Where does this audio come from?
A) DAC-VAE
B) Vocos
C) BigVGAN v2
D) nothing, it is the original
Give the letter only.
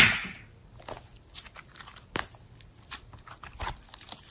D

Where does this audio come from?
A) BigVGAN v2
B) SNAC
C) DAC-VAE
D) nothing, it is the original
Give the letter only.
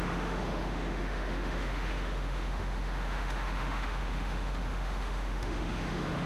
C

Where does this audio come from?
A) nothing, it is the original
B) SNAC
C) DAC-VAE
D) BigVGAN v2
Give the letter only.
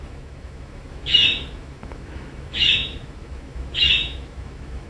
C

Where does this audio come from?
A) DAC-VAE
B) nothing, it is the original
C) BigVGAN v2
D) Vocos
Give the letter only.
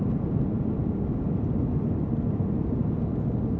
B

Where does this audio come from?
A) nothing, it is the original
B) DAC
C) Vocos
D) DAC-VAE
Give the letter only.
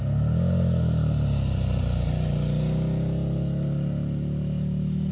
A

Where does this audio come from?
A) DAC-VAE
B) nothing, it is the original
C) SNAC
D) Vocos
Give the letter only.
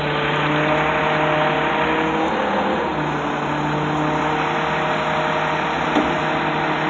B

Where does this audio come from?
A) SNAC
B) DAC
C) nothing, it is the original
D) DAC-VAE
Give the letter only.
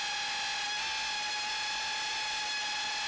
C